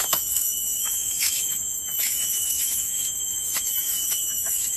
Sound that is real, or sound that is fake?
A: fake